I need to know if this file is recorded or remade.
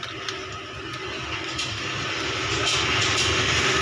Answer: recorded